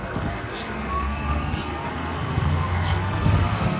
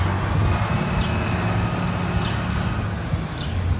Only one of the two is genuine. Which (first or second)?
second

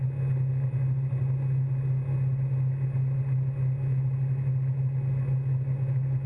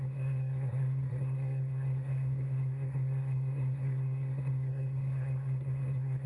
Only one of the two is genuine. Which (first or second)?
first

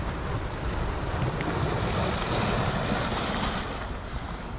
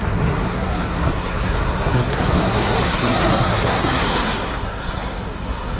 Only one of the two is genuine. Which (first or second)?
first